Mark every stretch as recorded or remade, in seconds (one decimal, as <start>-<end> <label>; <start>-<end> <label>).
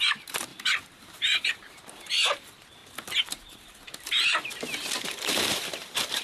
0.0-2.8 remade; 2.8-5.0 recorded; 5.0-6.2 remade